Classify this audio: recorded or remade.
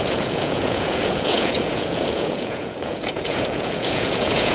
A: remade